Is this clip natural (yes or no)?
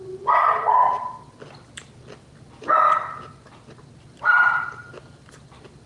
yes